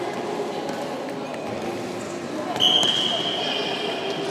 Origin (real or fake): real